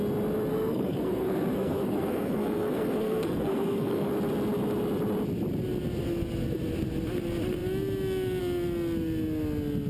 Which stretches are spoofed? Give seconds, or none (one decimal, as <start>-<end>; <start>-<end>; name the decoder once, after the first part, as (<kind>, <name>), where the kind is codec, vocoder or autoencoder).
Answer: 0.5-4.1 (codec, SNAC)